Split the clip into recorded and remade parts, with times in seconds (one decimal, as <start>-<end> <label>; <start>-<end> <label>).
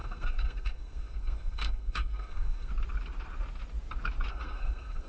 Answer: 0.0-2.7 remade; 2.7-4.3 recorded; 4.3-5.1 remade